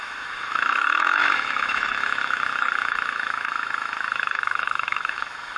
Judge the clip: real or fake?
fake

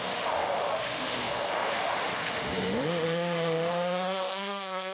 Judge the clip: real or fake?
fake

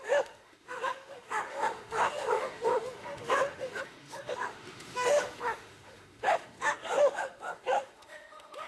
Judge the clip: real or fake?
fake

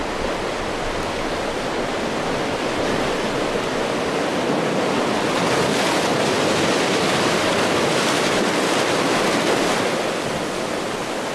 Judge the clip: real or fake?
real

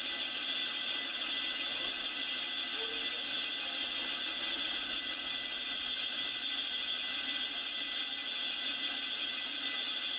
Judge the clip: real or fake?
real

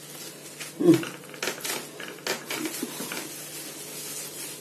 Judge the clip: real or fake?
real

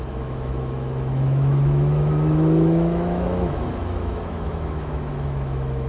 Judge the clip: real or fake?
fake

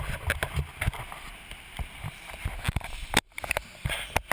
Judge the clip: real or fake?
real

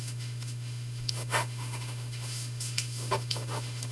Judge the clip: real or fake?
fake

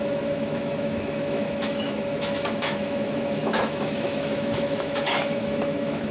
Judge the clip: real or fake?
fake